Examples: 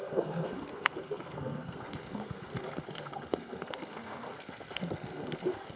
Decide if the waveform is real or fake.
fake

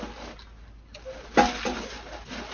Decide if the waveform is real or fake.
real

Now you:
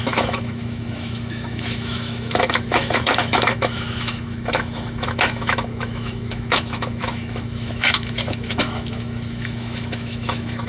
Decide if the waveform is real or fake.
fake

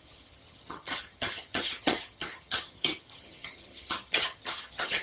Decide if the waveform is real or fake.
fake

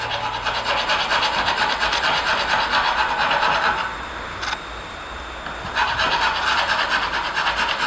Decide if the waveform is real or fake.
real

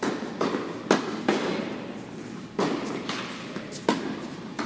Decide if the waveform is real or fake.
real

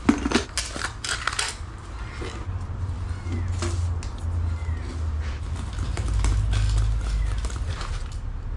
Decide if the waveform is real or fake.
real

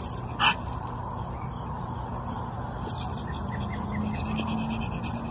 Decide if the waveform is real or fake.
real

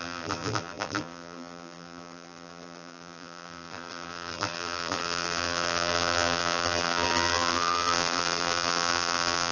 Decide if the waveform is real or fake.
fake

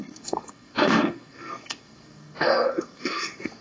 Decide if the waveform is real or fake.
fake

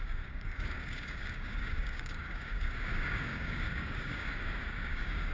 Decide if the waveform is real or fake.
fake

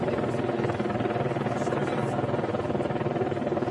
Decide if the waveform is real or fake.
real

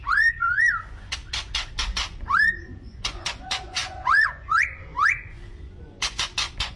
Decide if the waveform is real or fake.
fake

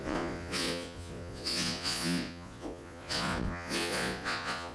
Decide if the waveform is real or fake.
fake